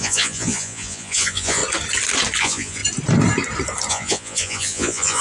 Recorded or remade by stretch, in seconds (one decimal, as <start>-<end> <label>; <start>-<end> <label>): 0.0-1.6 remade; 1.6-2.4 recorded; 2.4-2.8 remade; 2.8-3.9 recorded; 3.9-5.2 remade